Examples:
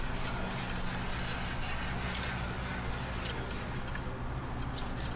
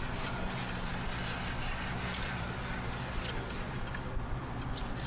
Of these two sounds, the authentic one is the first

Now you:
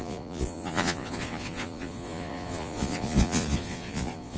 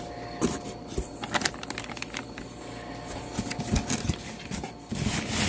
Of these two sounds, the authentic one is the second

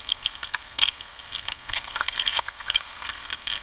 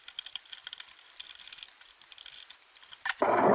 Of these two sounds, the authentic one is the second